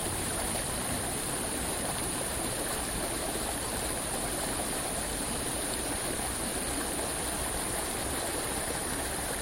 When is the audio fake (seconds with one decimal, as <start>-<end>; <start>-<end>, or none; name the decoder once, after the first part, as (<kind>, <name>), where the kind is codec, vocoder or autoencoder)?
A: 0.0-6.5 (vocoder, BigVGAN v2); 7.6-9.4